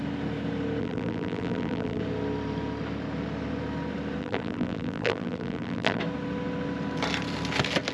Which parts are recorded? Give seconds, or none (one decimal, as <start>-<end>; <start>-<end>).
0.0-0.8; 2.0-4.2; 6.0-7.9